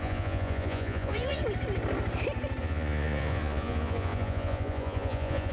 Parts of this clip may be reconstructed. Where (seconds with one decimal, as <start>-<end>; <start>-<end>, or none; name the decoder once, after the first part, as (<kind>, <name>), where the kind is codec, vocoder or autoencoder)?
0.0-1.4 (vocoder, Vocos); 2.6-5.5